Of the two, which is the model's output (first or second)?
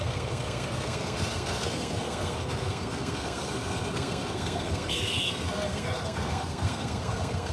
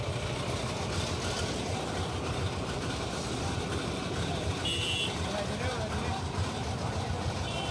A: first